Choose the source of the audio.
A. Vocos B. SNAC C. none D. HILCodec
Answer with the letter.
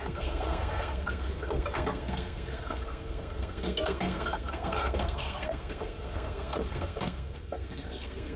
B